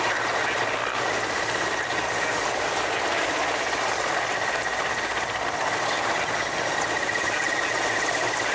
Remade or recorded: recorded